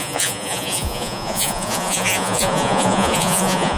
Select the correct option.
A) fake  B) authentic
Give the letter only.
A